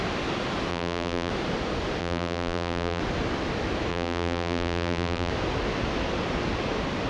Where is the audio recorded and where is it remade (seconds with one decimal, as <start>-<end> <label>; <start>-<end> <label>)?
0.0-0.7 recorded; 0.7-1.3 remade; 1.3-2.0 recorded; 2.0-3.0 remade; 3.0-3.9 recorded; 3.9-5.3 remade; 5.3-7.1 recorded